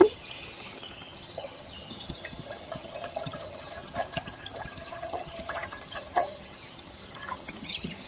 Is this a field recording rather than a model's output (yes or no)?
no